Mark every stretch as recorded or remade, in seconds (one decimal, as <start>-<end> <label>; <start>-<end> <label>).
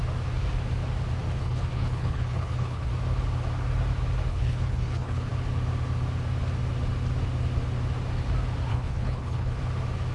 0.0-1.4 recorded; 1.4-2.9 remade; 2.9-4.3 recorded; 4.3-5.3 remade; 5.3-8.7 recorded; 8.7-9.6 remade; 9.6-10.1 recorded